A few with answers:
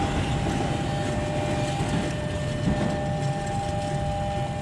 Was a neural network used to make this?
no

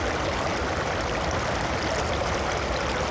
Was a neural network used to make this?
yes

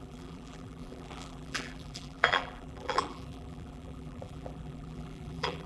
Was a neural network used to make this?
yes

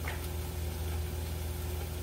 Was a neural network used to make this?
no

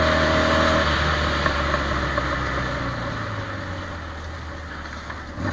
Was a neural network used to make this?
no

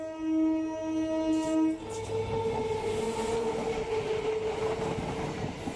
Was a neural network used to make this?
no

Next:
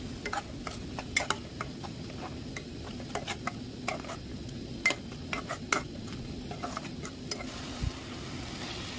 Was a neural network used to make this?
no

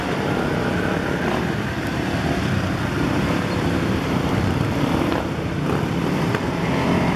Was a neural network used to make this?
yes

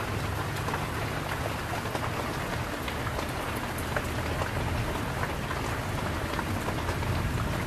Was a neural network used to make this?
no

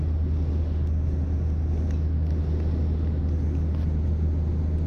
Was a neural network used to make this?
no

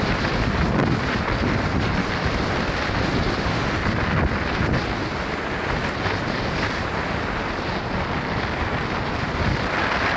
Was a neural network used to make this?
no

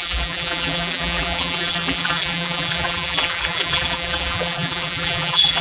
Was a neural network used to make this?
yes